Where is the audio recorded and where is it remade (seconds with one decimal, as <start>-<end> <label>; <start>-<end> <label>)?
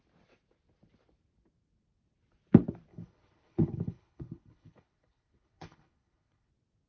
0.0-2.9 recorded; 2.9-6.5 remade; 6.5-6.9 recorded